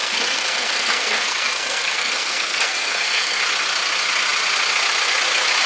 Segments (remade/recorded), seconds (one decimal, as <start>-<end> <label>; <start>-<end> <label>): 0.0-3.4 remade; 3.4-5.7 recorded